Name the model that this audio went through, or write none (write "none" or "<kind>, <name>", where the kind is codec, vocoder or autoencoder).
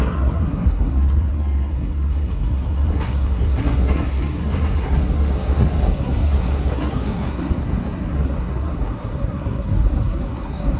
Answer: codec, SNAC